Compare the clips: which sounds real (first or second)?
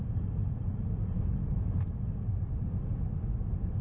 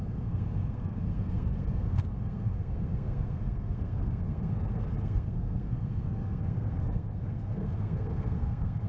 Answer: first